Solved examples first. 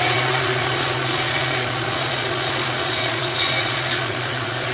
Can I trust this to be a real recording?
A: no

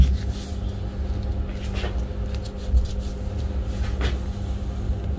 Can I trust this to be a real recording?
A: yes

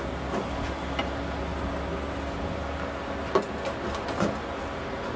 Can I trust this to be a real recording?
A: yes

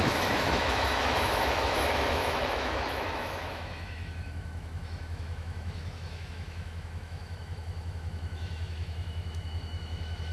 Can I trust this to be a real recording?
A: no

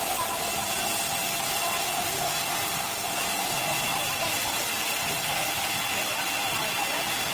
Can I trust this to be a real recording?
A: yes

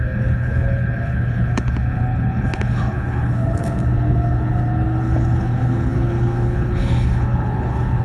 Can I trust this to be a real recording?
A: no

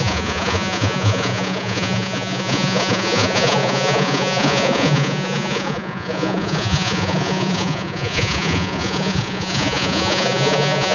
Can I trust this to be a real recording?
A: no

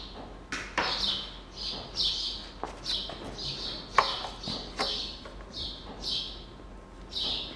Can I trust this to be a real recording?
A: yes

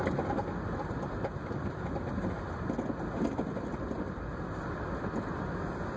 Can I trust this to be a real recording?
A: yes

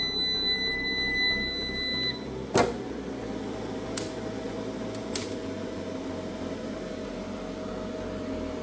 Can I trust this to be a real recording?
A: yes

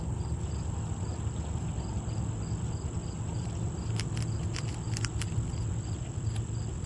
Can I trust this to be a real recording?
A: yes